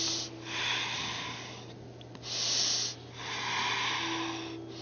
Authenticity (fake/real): real